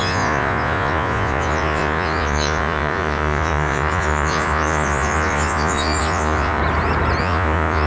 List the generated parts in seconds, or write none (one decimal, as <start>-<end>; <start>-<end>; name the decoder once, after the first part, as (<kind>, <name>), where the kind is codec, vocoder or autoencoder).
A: 0.0-6.6 (vocoder, Vocos); 7.2-7.9